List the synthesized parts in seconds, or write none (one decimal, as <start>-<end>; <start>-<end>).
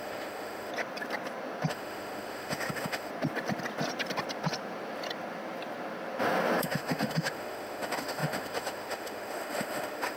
0.0-0.7; 1.7-3.1; 6.6-10.2